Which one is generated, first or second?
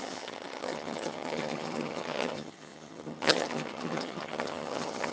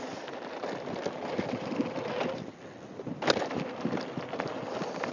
first